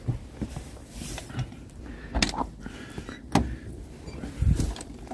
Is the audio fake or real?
real